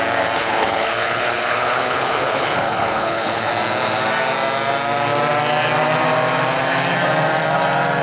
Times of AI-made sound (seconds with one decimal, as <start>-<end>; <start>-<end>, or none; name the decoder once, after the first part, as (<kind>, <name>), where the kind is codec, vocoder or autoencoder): 0.4-3.5 (codec, HILCodec)

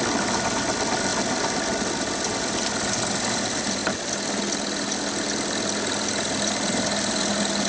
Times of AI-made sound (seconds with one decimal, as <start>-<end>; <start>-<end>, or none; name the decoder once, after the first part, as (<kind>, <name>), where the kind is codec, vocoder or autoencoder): none

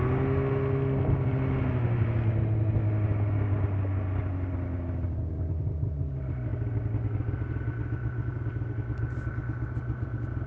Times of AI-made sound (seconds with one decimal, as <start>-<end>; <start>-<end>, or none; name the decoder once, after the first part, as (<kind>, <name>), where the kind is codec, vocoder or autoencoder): none

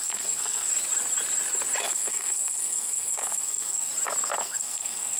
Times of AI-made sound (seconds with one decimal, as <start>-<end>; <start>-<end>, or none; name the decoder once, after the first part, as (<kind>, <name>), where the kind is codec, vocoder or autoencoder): 0.0-0.7 (codec, SNAC); 1.8-3.9; 4.4-5.2